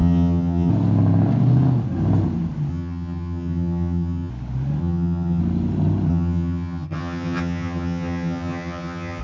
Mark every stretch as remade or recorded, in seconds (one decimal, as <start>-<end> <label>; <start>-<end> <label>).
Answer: 0.0-0.7 remade; 0.7-2.7 recorded; 2.7-4.3 remade; 4.3-4.8 recorded; 4.8-5.4 remade; 5.4-6.1 recorded; 6.1-9.2 remade